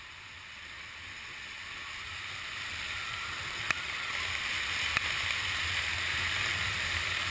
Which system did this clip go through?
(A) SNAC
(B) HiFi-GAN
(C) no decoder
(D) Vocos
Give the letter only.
C